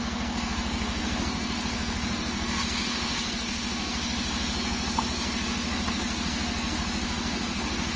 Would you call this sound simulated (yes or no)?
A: yes